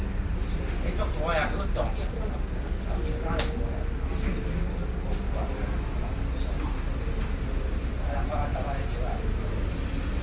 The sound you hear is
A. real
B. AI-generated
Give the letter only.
A